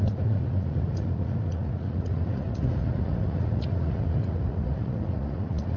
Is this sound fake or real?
fake